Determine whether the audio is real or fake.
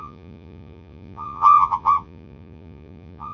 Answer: fake